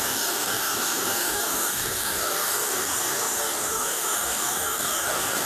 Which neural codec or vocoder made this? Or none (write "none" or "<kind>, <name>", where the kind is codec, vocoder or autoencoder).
codec, DAC